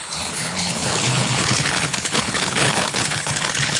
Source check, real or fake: fake